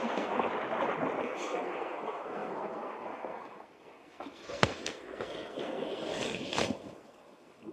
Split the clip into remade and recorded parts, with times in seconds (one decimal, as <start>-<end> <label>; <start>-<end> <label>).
0.0-0.5 remade; 0.5-1.2 recorded; 1.2-7.7 remade